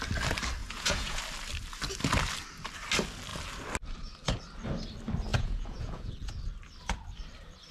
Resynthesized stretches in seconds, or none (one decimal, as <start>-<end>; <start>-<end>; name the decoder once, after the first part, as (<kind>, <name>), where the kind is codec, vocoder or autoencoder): 0.6-1.2 (vocoder, Vocos); 5.3-6.1